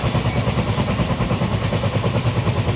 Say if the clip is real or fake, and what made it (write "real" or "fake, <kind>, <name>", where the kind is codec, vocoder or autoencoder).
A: real